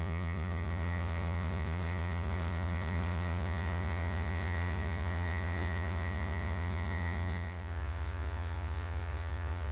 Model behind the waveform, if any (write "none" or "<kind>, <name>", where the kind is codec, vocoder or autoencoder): vocoder, Vocos